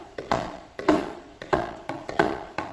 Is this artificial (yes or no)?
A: yes